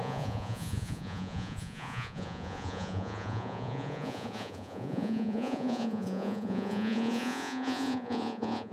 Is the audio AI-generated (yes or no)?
yes